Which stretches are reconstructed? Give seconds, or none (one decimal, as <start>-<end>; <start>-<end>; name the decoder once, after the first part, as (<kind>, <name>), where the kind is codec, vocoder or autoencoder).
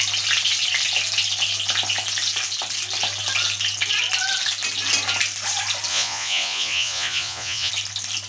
5.9-7.7 (vocoder, Vocos)